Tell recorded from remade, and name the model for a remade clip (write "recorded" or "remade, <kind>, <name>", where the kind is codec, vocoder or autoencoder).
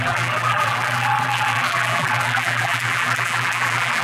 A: remade, vocoder, BigVGAN v2